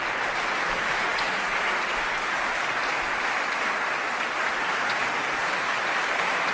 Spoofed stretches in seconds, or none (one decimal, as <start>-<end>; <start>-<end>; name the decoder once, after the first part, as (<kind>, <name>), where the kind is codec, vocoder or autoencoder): none